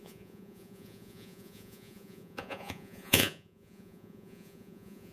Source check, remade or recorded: remade